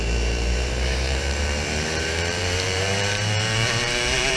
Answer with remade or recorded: remade